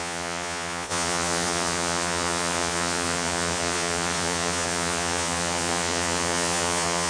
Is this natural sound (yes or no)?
no